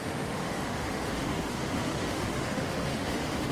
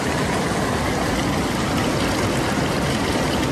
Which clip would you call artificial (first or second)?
first